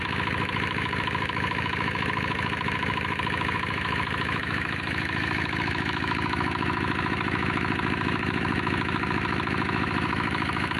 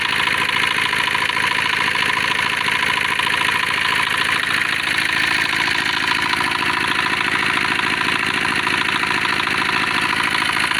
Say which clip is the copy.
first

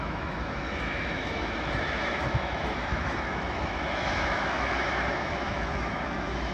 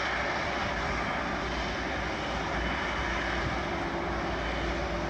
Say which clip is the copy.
first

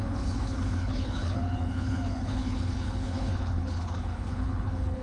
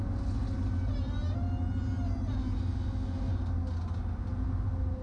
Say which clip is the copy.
first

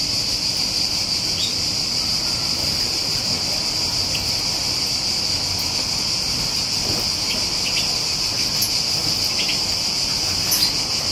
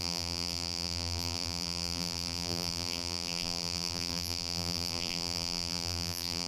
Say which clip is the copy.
second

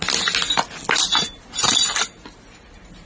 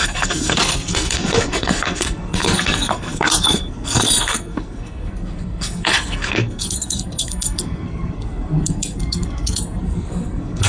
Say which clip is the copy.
second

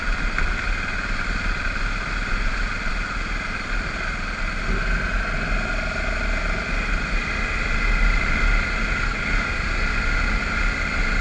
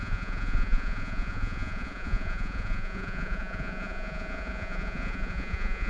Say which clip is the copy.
second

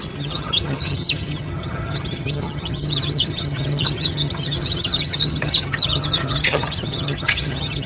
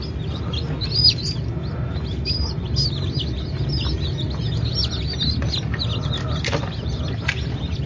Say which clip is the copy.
first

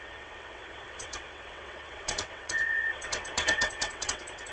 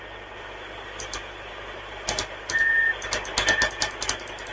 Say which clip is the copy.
first